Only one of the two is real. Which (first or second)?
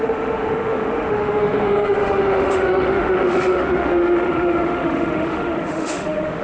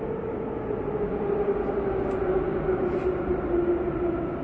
second